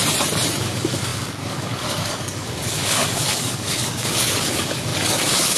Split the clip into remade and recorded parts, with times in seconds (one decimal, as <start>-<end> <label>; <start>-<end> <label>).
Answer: 0.0-0.6 recorded; 0.6-5.6 remade

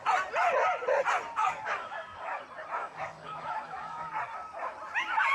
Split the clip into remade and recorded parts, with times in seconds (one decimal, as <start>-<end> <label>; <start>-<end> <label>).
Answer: 0.0-1.4 recorded; 1.4-2.4 remade; 2.4-2.8 recorded; 2.8-4.1 remade; 4.1-5.3 recorded

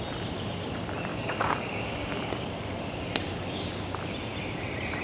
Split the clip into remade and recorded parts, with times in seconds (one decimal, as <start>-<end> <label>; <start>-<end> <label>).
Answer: 0.0-1.1 recorded; 1.1-2.2 remade; 2.2-5.0 recorded

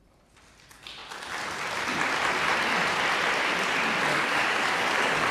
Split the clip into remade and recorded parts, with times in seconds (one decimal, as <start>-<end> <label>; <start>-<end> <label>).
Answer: 0.0-4.1 recorded; 4.1-5.3 remade

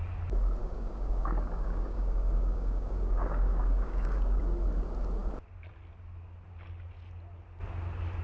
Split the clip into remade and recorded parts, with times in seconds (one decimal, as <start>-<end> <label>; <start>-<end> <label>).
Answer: 0.0-0.6 recorded; 0.6-4.4 remade; 4.4-8.2 recorded

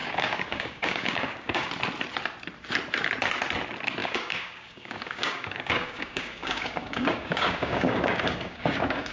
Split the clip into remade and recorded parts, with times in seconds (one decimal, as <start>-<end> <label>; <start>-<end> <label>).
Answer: 0.0-1.7 remade; 1.7-4.0 recorded; 4.0-9.1 remade

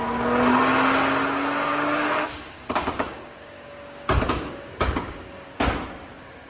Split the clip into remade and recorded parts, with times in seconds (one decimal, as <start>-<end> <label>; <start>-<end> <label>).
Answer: 0.0-1.7 recorded; 1.7-5.6 remade; 5.6-6.5 recorded

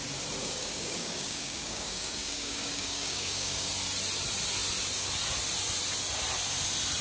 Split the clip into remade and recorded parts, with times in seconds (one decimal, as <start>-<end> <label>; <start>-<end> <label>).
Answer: 0.0-0.4 recorded; 0.4-3.7 remade; 3.7-7.0 recorded